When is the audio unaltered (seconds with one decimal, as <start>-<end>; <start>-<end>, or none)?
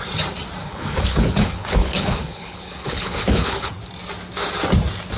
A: 0.0-0.6; 3.7-5.2